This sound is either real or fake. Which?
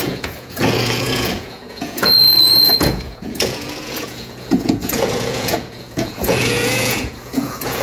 fake